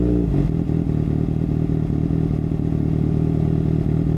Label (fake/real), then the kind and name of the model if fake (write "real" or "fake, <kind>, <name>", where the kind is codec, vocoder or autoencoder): real